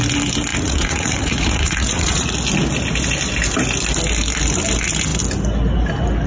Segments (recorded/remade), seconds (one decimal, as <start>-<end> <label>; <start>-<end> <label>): 0.0-0.5 recorded; 0.5-2.3 remade; 2.3-6.3 recorded